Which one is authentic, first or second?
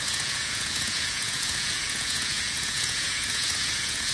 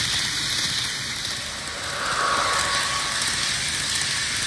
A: second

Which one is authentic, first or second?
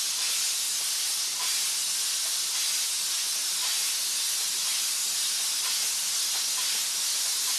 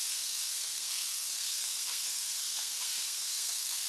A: first